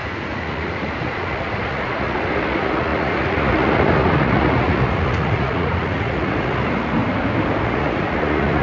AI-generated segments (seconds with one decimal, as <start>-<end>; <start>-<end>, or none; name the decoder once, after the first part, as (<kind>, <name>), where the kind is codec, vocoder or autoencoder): 0.0-7.0 (vocoder, Vocos); 7.6-8.6

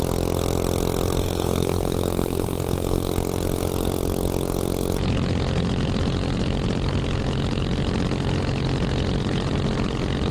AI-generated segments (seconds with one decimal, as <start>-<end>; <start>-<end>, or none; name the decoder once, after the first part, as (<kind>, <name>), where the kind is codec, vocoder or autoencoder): 1.2-3.1 (codec, SNAC)

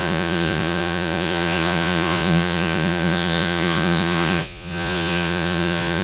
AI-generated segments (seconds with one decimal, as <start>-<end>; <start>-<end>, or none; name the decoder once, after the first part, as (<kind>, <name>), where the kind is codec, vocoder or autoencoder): 0.0-6.0 (vocoder, Vocos)

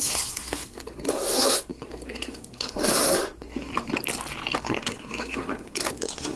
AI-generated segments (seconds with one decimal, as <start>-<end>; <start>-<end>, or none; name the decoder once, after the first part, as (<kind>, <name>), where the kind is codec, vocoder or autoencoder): 0.0-3.7 (codec, SNAC); 4.6-6.4